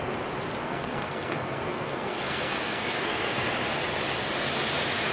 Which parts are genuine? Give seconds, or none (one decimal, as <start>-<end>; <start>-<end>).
0.0-0.6; 3.5-5.1